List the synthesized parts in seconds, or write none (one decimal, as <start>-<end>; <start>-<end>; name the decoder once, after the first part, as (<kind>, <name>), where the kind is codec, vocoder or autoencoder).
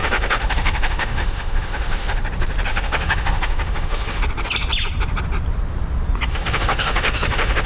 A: 0.0-2.2 (autoencoder, DAC-VAE); 2.7-4.2; 6.3-7.7